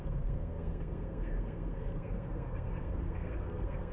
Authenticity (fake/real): fake